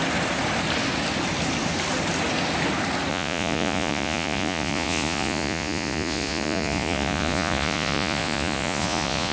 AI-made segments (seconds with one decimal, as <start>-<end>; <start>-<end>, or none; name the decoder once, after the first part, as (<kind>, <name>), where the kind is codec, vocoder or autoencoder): 3.1-9.3 (vocoder, Vocos)